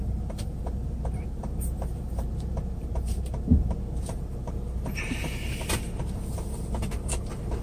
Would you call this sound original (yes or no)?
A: no